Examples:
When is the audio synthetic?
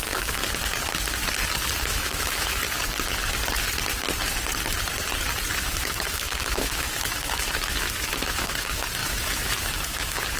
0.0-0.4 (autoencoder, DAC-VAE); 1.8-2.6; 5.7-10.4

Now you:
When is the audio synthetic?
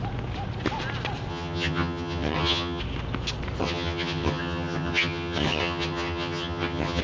1.3-2.8 (vocoder, HiFi-GAN); 3.6-7.0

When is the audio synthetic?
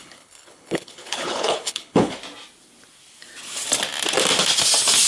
0.0-2.2 (codec, HILCodec)